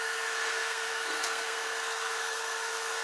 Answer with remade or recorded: remade